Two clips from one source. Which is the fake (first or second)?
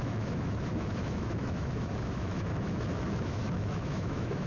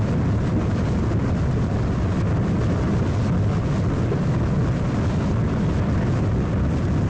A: first